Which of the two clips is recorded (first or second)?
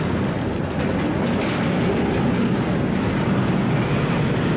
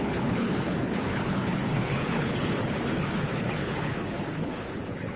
first